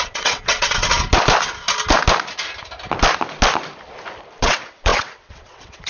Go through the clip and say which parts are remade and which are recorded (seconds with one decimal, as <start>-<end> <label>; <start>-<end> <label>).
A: 0.0-0.9 remade; 0.9-4.4 recorded; 4.4-5.9 remade

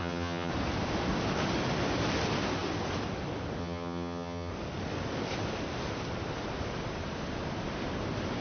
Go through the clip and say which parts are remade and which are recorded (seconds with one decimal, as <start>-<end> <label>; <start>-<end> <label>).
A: 0.0-0.5 remade; 0.5-3.6 recorded; 3.6-4.5 remade; 4.5-8.4 recorded